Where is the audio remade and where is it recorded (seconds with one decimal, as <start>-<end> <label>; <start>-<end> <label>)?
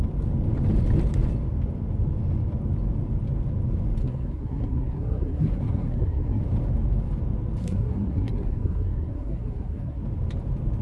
0.0-4.0 recorded; 4.0-6.4 remade; 6.4-7.6 recorded; 7.6-10.0 remade; 10.0-10.8 recorded